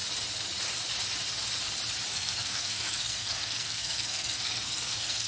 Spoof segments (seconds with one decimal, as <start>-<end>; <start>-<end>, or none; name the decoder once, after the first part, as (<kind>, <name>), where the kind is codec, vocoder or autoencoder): 2.1-5.3 (codec, SNAC)